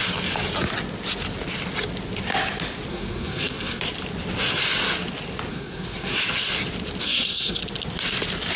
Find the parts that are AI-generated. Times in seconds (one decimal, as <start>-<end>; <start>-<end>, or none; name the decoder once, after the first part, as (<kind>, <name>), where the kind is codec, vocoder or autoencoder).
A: 2.9-3.8 (codec, SNAC); 5.5-6.2; 7.0-7.6